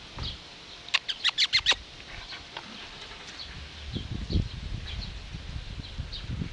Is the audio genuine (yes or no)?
yes